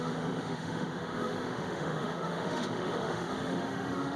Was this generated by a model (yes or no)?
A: yes